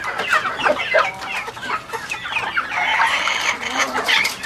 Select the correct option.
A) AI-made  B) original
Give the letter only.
B